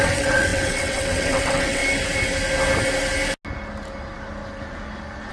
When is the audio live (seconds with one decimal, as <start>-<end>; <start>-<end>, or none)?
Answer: 1.8-5.3